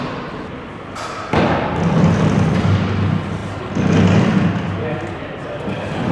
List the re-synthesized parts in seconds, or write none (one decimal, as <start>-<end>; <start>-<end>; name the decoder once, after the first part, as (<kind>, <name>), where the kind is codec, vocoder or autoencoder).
none